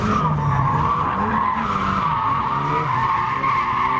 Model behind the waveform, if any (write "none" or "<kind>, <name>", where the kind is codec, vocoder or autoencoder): none